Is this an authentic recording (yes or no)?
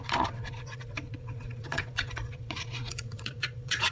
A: no